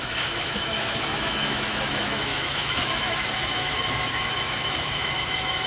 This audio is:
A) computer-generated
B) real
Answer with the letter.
A